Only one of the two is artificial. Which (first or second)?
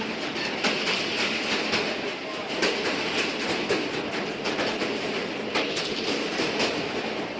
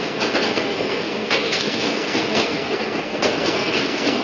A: second